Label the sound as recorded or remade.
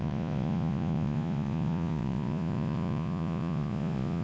remade